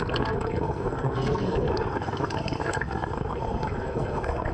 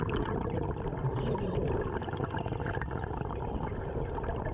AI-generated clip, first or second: first